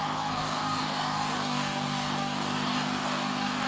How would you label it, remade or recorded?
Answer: remade